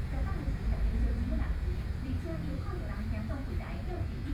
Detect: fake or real fake